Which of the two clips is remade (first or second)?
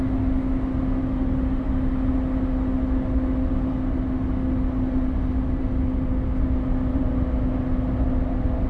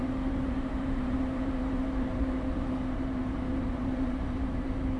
second